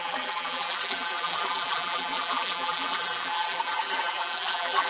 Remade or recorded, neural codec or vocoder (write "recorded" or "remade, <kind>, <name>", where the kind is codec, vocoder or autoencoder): remade, vocoder, BigVGAN v2